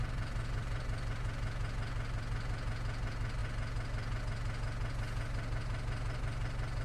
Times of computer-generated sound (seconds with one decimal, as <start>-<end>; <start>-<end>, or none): none